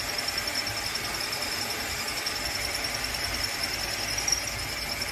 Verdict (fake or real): real